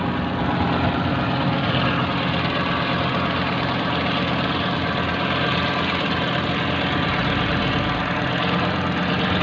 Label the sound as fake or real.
real